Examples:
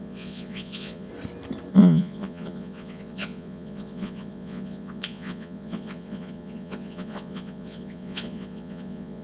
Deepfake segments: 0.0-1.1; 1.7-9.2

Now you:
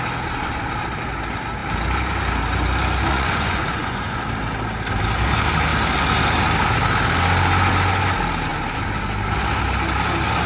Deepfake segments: 3.1-4.2

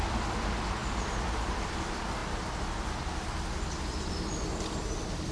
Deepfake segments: none

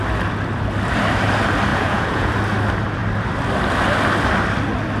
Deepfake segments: 1.7-2.3

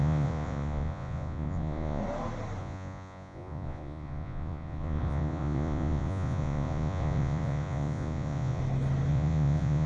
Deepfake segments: 0.0-2.0; 2.6-8.6; 9.1-9.9